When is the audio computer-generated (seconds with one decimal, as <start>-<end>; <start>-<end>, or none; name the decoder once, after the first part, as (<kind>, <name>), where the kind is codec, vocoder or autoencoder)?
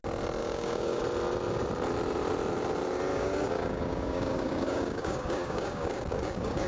0.4-1.0 (codec, DAC); 3.1-6.7